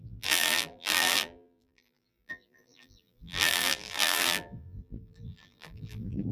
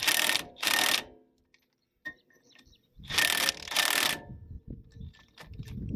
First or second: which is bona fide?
second